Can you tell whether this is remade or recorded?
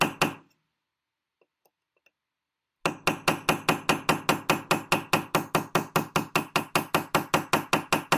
recorded